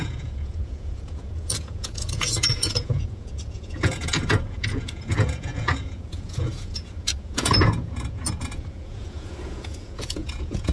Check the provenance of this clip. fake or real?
fake